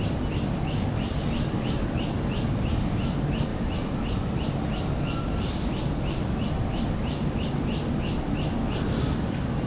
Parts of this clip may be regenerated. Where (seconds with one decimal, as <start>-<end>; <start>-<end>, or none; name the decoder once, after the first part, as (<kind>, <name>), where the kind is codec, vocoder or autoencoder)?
none

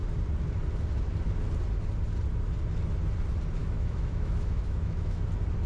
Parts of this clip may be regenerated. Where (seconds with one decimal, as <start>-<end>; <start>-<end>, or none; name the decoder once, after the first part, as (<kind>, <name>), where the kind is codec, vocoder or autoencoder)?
3.6-5.2 (autoencoder, DAC-VAE)